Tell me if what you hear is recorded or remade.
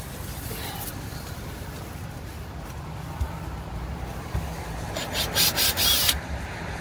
recorded